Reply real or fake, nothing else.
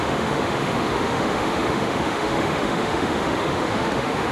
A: fake